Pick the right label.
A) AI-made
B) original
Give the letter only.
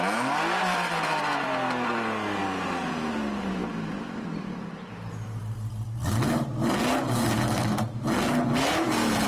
B